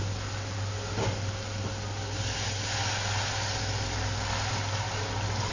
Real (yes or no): yes